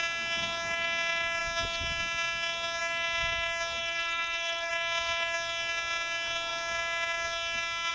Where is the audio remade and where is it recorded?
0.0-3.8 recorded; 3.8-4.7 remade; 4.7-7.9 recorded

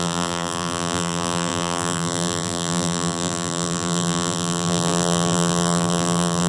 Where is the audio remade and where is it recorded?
0.0-6.5 remade

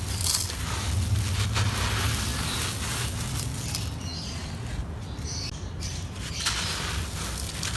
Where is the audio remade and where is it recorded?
0.0-7.8 recorded